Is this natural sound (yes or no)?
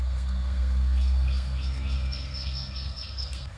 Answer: no